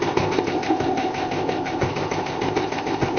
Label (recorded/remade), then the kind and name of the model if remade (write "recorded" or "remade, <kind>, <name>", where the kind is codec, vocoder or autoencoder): remade, codec, ZipCodec